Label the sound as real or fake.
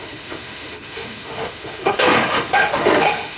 fake